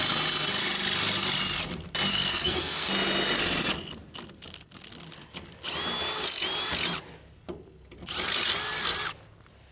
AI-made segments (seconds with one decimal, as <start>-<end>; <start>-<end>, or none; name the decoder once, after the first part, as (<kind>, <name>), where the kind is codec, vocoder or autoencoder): 2.1-2.9 (codec, SNAC)